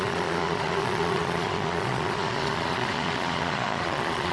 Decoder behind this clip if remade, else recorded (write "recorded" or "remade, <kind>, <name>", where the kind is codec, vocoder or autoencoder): remade, vocoder, Vocos